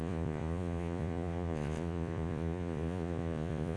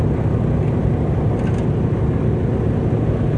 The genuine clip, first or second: second